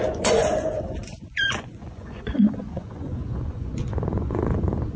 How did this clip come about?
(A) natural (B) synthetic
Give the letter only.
B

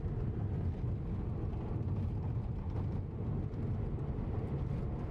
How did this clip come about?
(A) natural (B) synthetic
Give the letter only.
A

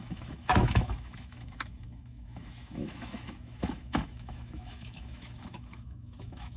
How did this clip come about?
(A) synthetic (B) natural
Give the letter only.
A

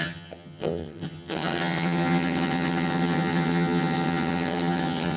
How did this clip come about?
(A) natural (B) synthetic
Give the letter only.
B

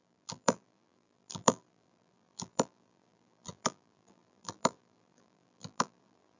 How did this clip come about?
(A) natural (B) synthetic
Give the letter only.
B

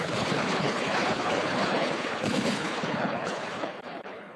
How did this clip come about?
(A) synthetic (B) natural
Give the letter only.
A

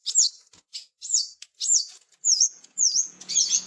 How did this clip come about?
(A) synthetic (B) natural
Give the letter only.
A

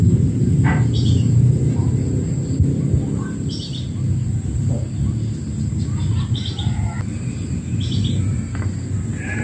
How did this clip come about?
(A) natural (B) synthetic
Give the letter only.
A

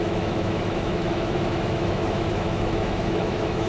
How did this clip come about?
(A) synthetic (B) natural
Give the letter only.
A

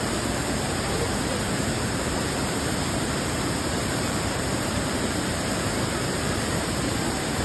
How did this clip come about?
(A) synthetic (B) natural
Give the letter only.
A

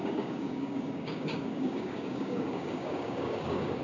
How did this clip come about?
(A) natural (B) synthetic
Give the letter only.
B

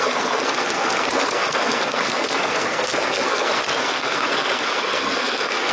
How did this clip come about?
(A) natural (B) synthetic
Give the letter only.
B